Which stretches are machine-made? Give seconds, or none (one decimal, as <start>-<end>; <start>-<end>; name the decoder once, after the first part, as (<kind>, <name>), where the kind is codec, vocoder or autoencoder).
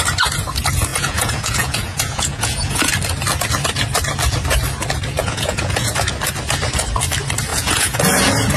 0.9-2.9 (vocoder, Vocos); 5.2-5.9; 7.5-8.0